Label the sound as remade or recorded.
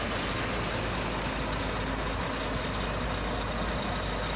recorded